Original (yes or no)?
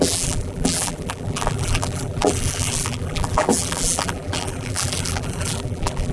no